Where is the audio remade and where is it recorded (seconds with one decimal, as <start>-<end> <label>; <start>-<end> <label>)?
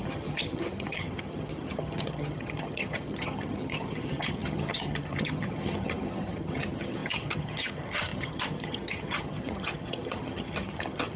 0.0-11.2 remade